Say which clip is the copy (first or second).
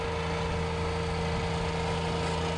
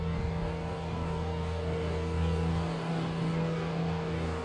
second